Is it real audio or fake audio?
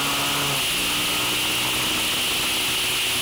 real